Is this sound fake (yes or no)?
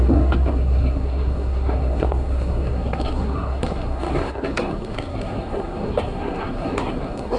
yes